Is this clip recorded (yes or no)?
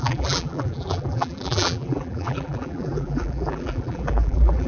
no